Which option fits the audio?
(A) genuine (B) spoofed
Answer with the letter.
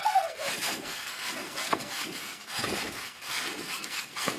B